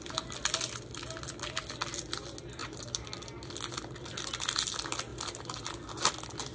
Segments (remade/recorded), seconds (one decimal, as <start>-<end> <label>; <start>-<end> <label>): 0.0-6.5 recorded